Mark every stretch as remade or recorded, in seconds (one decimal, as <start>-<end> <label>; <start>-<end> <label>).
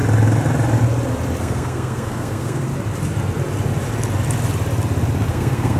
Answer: 0.0-1.4 recorded; 1.4-2.7 remade; 2.7-5.3 recorded; 5.3-5.8 remade